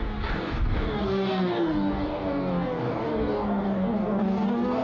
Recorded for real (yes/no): no